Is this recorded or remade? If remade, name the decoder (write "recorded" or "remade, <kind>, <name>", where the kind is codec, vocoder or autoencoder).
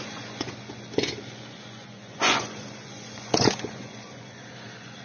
remade, vocoder, Vocos